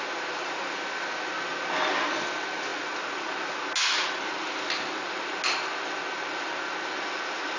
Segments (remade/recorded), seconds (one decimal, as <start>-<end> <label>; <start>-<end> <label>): 0.0-7.6 recorded